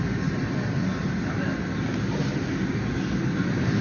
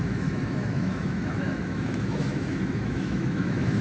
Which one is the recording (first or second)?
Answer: first